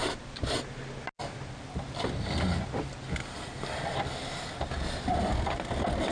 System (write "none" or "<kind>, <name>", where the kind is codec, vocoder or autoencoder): none